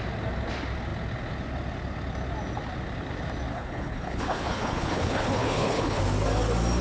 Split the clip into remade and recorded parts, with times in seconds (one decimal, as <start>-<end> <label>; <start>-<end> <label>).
0.0-3.5 recorded; 3.5-6.0 remade; 6.0-6.8 recorded